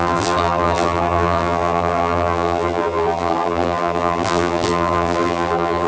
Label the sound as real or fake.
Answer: fake